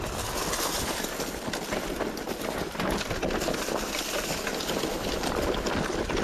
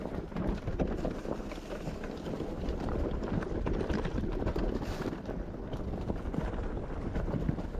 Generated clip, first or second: second